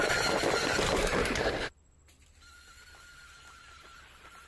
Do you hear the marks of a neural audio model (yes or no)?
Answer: no